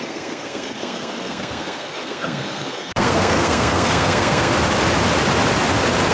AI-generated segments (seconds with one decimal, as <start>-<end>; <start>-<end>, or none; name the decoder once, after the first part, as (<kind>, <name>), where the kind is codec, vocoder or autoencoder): 0.0-4.5 (codec, SNAC)